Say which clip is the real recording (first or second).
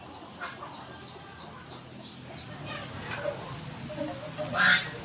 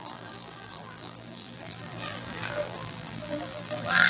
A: first